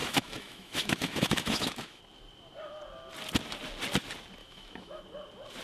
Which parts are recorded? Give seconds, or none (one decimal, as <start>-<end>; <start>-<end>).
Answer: 2.0-4.4; 5.0-5.6